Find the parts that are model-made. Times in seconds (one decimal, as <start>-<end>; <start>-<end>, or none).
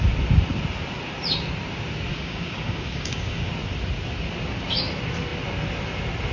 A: 2.1-3.5